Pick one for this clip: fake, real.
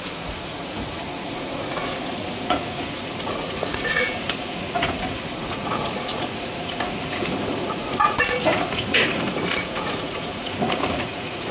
fake